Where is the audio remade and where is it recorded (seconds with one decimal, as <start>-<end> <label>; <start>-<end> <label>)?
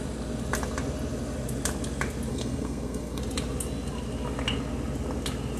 0.0-2.3 recorded; 2.3-3.2 remade; 3.2-5.6 recorded